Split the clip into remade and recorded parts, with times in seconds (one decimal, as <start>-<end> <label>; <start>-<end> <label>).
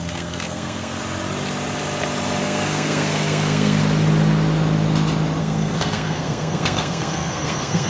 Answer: 0.0-1.0 remade; 1.0-2.4 recorded; 2.4-3.8 remade; 3.8-5.4 recorded; 5.4-7.9 remade